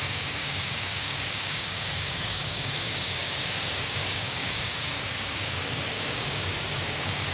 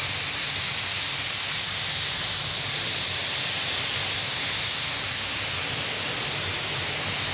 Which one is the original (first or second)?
second